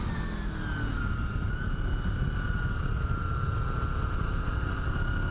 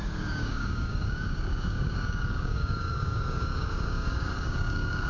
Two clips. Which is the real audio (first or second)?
first